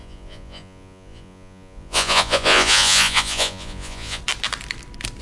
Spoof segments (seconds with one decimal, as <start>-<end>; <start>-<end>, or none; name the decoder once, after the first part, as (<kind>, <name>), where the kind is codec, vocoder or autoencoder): 0.0-4.2 (vocoder, Vocos)